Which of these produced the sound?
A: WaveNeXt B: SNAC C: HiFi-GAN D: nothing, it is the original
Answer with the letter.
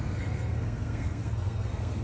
B